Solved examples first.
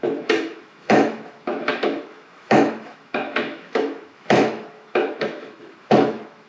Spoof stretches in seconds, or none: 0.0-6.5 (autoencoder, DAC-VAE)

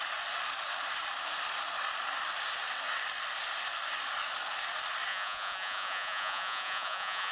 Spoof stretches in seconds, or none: 5.1-7.3 (vocoder, Vocos)

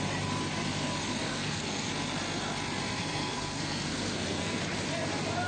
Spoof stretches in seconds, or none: 1.3-1.9 (codec, SNAC); 3.0-4.6

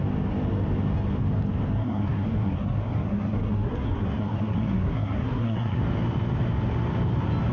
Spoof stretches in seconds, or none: 1.8-5.8 (codec, SNAC)

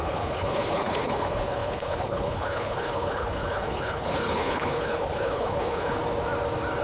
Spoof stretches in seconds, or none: 0.0-6.0 (codec, HILCodec)

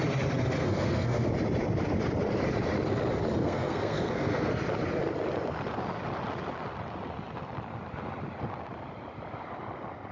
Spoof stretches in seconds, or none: 0.6-1.3 (codec, SNAC); 3.4-4.5

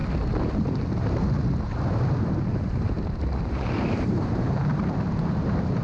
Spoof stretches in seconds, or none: 3.5-5.8 (vocoder, BigVGAN v2)